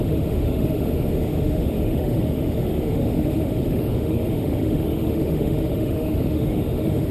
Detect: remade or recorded remade